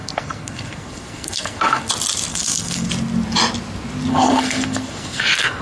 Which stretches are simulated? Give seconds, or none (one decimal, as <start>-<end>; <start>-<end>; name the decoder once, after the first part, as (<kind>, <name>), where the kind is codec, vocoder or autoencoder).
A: 0.0-1.9 (codec, SNAC); 2.3-2.9; 4.1-5.6